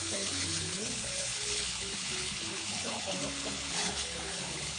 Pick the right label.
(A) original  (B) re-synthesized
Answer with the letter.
B